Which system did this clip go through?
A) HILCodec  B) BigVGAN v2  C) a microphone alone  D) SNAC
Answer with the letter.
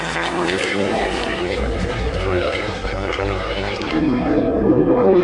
D